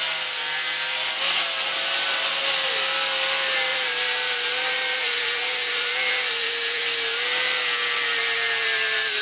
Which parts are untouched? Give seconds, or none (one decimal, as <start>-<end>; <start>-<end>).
0.0-3.7; 6.8-9.2